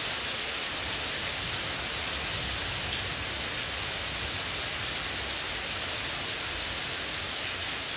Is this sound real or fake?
real